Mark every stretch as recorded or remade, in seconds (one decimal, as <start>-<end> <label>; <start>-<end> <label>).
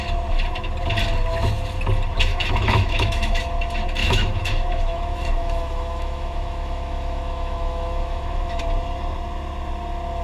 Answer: 0.0-2.3 recorded; 2.3-3.4 remade; 3.4-4.0 recorded; 4.0-8.6 remade; 8.6-10.2 recorded